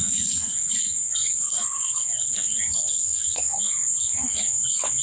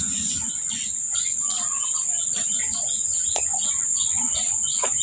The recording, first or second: second